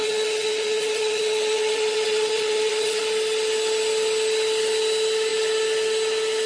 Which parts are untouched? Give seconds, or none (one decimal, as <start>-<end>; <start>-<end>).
3.0-6.5